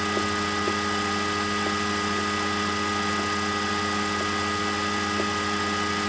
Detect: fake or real real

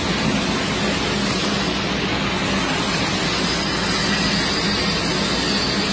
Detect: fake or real real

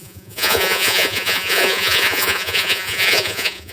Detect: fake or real fake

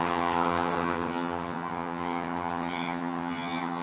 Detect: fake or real fake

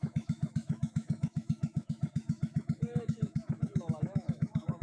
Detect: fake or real fake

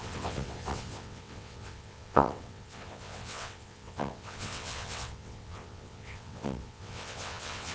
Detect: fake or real fake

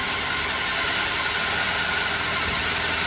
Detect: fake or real real